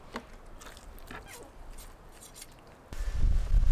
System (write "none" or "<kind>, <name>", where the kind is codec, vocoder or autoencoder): none